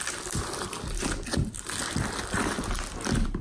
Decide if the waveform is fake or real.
fake